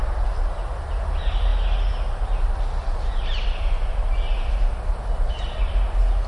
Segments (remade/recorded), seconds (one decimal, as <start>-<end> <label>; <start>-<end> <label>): 0.0-6.3 recorded

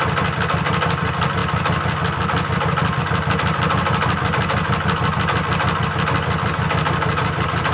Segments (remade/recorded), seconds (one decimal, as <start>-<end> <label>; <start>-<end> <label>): 0.0-7.7 recorded

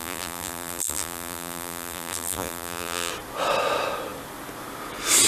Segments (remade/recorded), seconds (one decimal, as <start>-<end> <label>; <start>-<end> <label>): 0.0-3.1 remade; 3.1-5.3 recorded

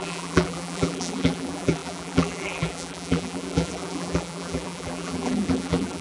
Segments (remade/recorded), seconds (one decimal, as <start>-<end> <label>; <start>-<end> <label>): 0.0-6.0 remade

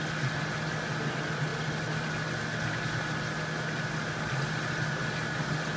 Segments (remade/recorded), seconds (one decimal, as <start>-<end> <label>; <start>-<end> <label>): 0.0-5.8 recorded

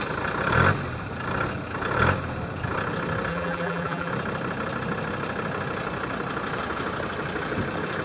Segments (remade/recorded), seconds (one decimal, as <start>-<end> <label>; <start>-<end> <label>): 0.0-3.3 recorded; 3.3-4.1 remade; 4.1-8.0 recorded

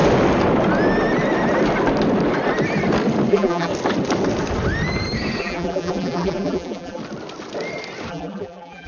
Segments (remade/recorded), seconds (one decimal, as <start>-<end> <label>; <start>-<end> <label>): 0.0-3.3 recorded; 3.3-3.7 remade; 3.7-5.4 recorded; 5.4-7.0 remade; 7.0-8.1 recorded; 8.1-8.9 remade